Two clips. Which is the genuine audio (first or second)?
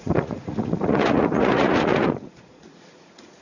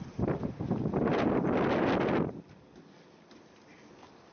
second